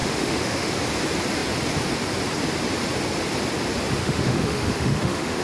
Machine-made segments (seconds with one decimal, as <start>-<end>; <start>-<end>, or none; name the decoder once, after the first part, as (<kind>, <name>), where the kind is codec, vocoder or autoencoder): 0.0-0.7 (autoencoder, DAC-VAE); 4.0-5.4